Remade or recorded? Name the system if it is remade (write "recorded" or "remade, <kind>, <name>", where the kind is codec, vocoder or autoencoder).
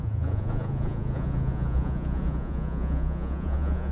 remade, vocoder, Vocos